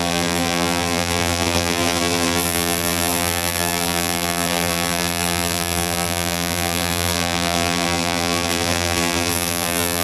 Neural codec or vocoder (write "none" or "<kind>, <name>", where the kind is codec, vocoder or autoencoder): vocoder, BigVGAN v2